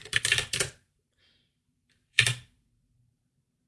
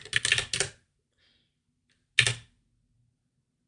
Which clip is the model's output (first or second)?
first